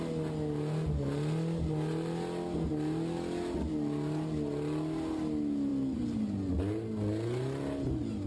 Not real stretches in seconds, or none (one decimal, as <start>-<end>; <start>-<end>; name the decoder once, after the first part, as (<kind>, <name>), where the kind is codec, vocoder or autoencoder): none